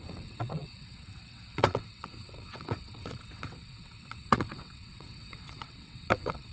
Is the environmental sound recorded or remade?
remade